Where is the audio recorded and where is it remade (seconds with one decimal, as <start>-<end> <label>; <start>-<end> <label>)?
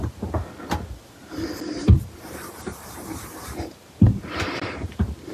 0.0-1.8 recorded; 1.8-5.3 remade